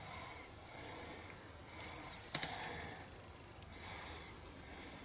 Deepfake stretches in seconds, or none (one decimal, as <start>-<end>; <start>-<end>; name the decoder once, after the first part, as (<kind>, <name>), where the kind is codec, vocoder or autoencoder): none